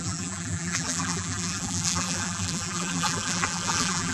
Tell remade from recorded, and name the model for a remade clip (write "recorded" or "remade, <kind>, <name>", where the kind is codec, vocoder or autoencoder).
remade, vocoder, BigVGAN v2